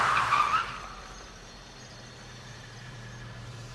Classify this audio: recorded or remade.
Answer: remade